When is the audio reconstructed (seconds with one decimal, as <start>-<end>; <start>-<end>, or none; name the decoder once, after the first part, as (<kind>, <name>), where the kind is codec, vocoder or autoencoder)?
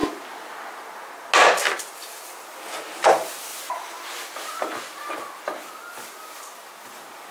none